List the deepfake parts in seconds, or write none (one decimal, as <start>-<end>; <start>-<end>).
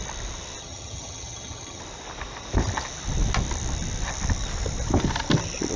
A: 0.6-1.8